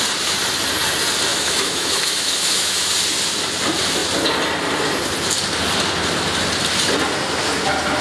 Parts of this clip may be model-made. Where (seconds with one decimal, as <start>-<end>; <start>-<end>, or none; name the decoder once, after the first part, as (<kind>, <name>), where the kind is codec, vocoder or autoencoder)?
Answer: 1.3-2.9 (autoencoder, DAC-VAE)